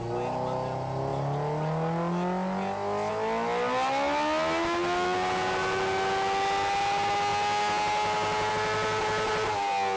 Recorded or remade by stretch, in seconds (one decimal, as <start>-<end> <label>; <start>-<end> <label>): 0.0-10.0 recorded